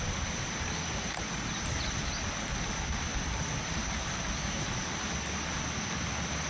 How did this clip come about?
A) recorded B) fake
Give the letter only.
A